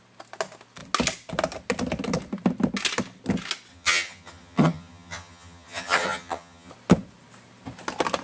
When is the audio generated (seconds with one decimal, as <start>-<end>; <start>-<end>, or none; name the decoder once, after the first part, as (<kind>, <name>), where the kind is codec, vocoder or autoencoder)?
3.7-6.7 (vocoder, HiFi-GAN)